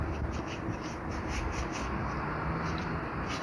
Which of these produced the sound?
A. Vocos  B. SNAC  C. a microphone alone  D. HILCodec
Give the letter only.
C